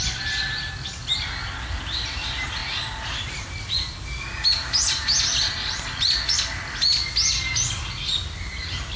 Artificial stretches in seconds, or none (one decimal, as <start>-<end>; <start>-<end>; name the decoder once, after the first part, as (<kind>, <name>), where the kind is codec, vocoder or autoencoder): none